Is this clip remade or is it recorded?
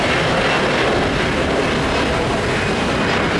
recorded